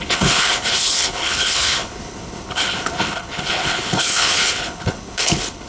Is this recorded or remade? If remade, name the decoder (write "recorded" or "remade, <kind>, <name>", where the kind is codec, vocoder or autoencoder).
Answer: remade, codec, HILCodec